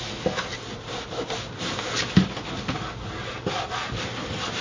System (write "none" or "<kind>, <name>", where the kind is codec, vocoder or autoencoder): none